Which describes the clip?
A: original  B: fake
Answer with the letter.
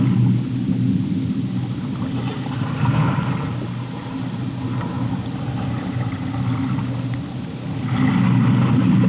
A